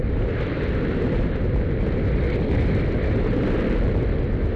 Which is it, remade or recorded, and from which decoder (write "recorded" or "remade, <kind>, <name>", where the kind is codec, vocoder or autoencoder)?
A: recorded